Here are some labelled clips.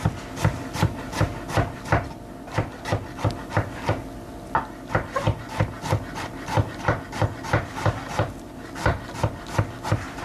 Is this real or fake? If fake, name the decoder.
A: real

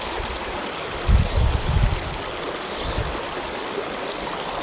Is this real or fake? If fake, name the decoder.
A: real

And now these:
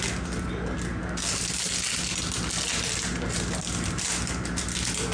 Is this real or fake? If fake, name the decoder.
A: real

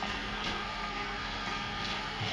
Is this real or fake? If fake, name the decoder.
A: fake, codec, SNAC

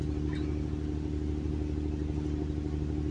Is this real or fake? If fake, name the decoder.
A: real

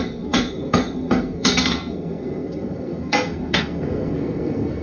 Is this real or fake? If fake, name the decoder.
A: fake, codec, SNAC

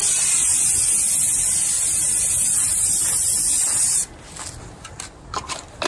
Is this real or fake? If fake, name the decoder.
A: real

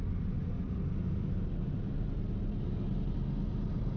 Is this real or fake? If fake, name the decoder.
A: real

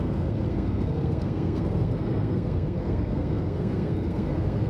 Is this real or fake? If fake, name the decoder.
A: fake, codec, SNAC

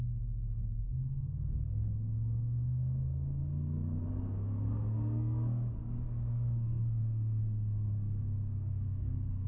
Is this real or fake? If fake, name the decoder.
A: fake, codec, SNAC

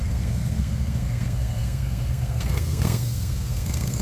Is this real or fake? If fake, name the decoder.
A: fake, codec, SNAC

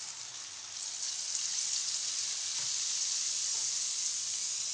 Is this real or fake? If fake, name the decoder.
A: real